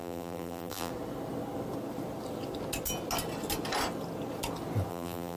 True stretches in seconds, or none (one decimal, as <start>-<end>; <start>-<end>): 0.9-4.9